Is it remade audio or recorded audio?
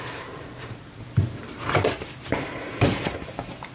remade